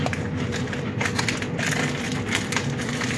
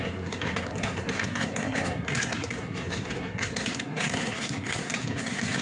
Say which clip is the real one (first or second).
first